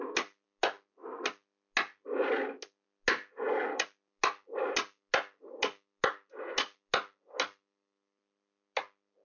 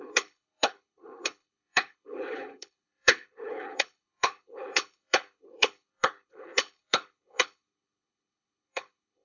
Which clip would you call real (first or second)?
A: first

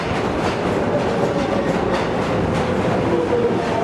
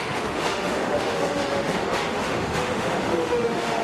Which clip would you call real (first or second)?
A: first